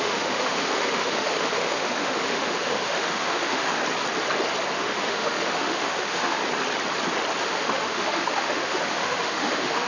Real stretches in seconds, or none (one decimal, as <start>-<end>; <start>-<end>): 3.8-4.7; 6.4-7.4